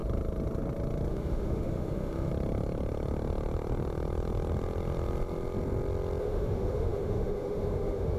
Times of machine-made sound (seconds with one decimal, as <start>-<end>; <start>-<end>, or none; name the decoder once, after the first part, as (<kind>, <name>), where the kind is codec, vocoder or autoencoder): 1.1-2.3 (autoencoder, DAC-VAE); 6.2-8.2